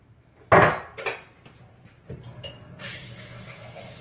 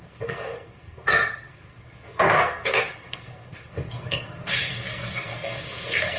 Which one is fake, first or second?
second